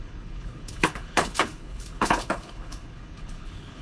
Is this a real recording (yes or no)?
no